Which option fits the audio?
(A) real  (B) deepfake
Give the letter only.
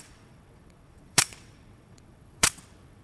B